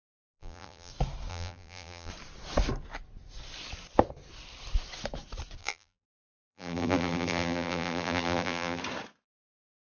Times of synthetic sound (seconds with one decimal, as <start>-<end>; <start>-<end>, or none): 0.0-0.9; 1.3-2.1; 5.6-8.8